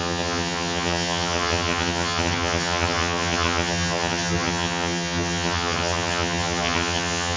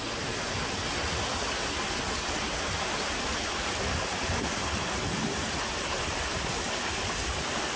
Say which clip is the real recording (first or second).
second